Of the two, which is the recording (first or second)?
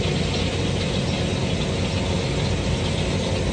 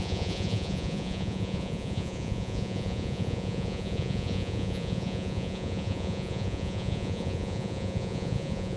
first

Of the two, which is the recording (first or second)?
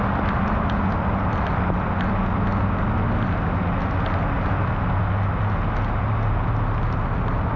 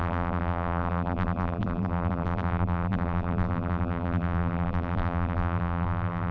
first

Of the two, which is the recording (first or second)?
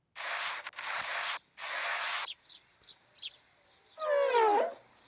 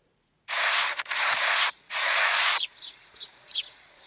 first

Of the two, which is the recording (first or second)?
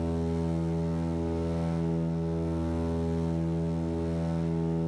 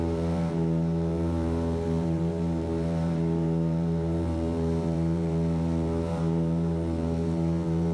first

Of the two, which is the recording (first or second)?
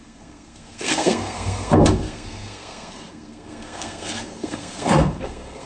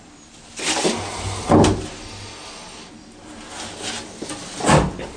second